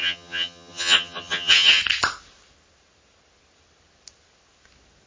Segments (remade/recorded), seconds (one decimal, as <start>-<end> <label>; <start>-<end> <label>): 0.0-1.8 remade; 1.8-5.1 recorded